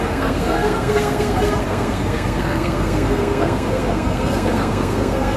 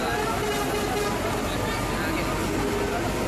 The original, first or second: second